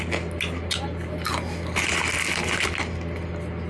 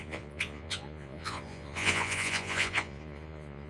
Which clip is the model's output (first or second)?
second